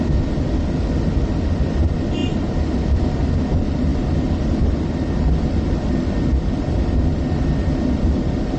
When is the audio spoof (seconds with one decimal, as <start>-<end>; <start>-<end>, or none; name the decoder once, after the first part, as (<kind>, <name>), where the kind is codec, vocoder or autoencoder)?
none